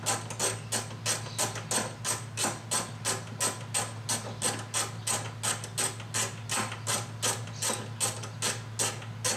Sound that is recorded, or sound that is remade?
recorded